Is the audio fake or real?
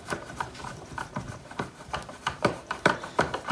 fake